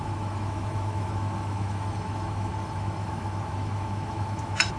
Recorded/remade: remade